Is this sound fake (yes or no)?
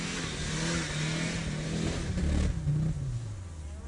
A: no